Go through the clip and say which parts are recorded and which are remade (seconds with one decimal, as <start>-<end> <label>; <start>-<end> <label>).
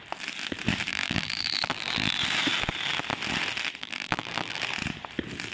0.0-0.9 recorded; 0.9-2.2 remade; 2.2-3.8 recorded; 3.8-4.6 remade; 4.6-5.5 recorded